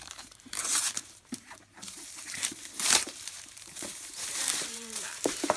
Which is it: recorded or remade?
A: remade